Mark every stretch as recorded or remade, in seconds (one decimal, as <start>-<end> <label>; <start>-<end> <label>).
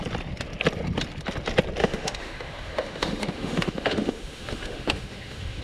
0.0-1.8 recorded; 1.8-5.6 remade